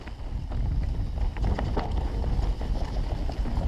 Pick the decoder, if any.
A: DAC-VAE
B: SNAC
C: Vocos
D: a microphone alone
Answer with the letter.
D